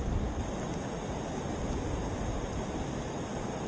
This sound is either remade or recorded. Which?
recorded